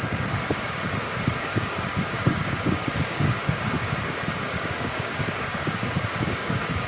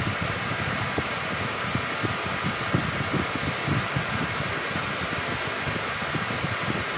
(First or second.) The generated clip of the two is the first